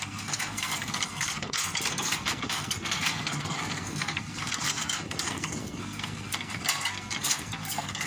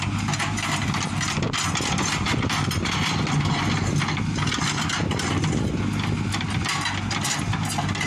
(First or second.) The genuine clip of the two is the second